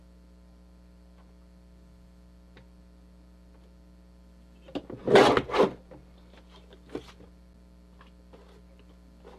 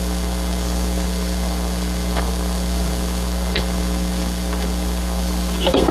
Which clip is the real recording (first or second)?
first